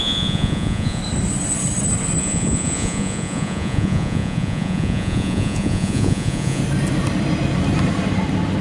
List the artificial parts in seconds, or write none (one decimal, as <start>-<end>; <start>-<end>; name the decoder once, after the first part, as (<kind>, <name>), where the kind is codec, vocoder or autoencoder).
0.0-1.0 (vocoder, Vocos); 2.2-6.6

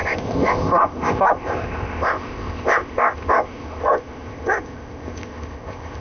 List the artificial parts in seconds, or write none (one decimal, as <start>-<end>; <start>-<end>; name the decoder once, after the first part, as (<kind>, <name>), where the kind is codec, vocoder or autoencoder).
0.0-6.0 (codec, ZipCodec)

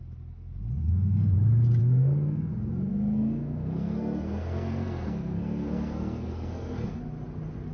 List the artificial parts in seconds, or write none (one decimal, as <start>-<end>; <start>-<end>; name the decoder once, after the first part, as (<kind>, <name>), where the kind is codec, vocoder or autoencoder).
0.8-1.3 (codec, SNAC); 1.8-2.5; 2.9-7.0

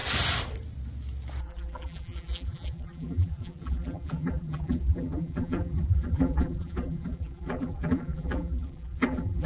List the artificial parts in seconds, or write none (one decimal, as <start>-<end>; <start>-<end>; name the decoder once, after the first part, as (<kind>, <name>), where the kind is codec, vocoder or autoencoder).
1.4-9.5 (vocoder, BigVGAN v2)

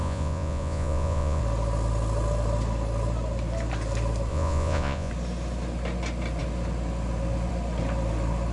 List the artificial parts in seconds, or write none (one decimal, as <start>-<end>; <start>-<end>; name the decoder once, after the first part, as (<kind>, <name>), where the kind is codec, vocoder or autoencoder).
0.0-1.4 (vocoder, Vocos); 4.3-5.1

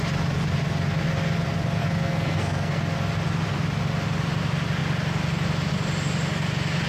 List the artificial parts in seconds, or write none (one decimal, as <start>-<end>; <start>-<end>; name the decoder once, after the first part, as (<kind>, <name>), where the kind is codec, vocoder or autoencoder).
1.8-2.8 (codec, SNAC)